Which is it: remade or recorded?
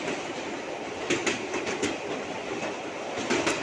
recorded